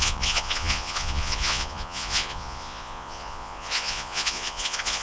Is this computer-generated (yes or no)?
yes